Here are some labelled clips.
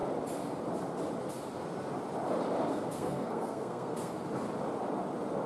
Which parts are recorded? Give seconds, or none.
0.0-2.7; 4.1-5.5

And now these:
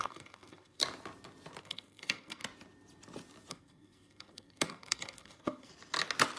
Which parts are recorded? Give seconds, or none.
0.8-1.6; 2.4-3.5; 5.7-6.4

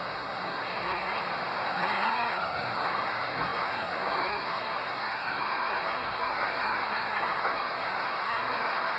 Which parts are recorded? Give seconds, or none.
1.2-1.7

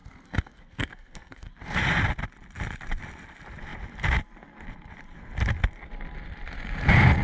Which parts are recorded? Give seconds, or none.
1.5-7.2

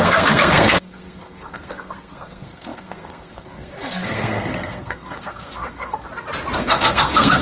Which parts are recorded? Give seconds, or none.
6.1-6.6